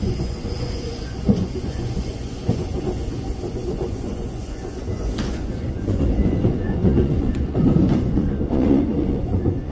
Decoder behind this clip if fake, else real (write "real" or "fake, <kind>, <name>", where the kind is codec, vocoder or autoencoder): fake, vocoder, Vocos